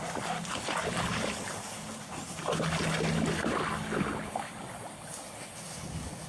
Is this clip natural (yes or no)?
yes